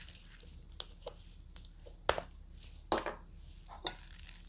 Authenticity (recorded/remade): recorded